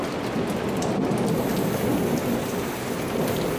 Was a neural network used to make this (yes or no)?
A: no